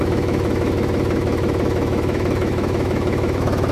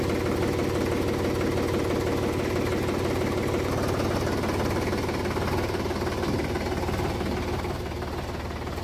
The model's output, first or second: first